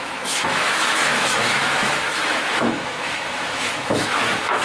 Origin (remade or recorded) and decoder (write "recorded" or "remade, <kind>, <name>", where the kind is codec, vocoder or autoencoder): remade, autoencoder, DAC-VAE